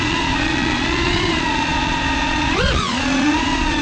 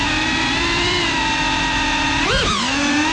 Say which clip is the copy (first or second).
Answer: first